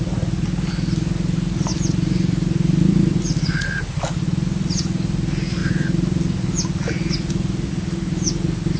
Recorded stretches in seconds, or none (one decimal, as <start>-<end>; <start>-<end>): 0.0-8.8